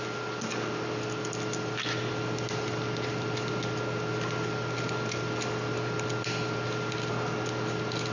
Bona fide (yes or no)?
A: yes